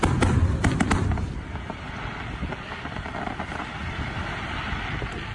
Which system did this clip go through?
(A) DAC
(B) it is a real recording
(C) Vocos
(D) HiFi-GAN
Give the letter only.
B